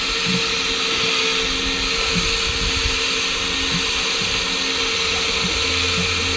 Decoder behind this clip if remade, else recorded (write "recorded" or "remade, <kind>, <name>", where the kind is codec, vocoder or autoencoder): recorded